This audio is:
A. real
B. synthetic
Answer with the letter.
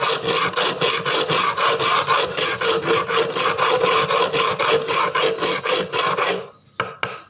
A